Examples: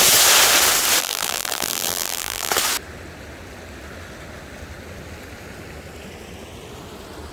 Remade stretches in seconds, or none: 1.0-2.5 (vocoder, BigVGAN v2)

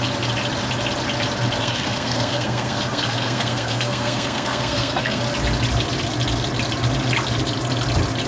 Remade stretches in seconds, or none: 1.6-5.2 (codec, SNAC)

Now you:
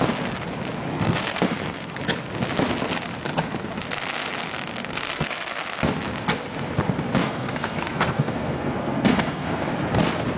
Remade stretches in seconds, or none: 0.9-2.0 (codec, SNAC); 4.9-5.5; 7.2-9.6

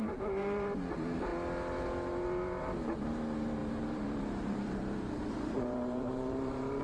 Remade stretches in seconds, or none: 0.0-1.3 (vocoder, BigVGAN v2); 2.6-6.8

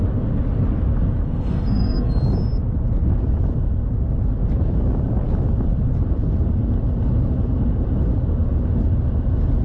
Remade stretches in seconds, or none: 1.2-2.1 (codec, SNAC)

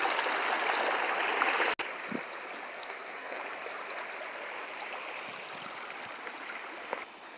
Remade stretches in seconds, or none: 2.8-3.4 (codec, SNAC)